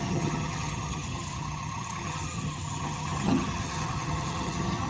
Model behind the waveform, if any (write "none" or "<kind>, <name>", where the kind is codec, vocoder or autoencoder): vocoder, HiFi-GAN